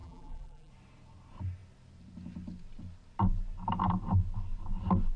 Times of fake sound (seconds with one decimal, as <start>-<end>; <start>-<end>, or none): 0.0-0.7